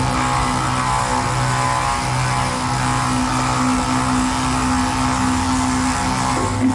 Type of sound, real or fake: real